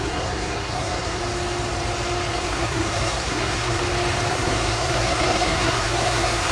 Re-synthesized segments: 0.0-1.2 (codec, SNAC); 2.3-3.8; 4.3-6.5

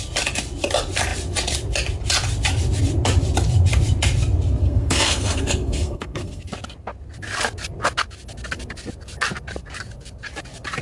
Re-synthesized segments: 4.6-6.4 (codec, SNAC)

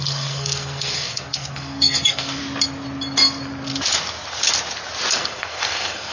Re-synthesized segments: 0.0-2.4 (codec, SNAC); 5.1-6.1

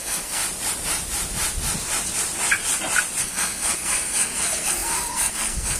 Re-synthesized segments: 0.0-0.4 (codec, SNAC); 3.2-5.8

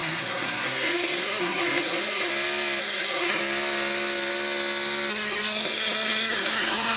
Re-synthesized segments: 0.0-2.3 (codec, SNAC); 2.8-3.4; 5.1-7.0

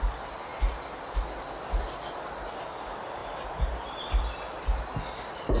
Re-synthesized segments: none

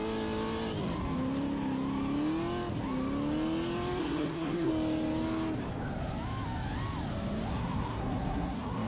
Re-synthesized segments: 4.0-4.7 (codec, SNAC); 7.5-8.9

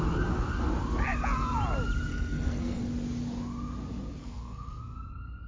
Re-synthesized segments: 2.1-2.8 (codec, SNAC); 4.2-4.8